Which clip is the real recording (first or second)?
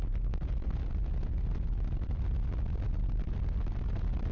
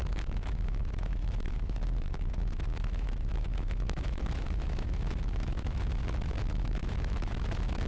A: first